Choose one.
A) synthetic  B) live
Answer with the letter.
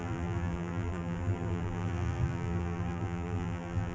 A